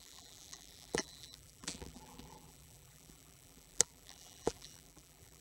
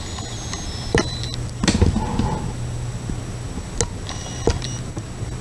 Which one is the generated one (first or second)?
first